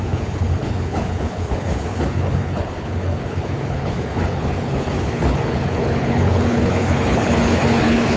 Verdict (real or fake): fake